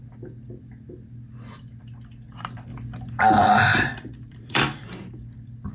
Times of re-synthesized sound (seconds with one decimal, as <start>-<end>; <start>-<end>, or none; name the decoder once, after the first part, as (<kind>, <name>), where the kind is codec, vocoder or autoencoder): 3.7-5.0 (vocoder, BigVGAN v2)